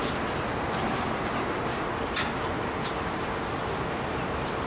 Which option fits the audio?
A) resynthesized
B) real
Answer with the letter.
B